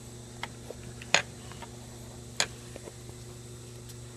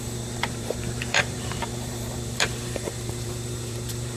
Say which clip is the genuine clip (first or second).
first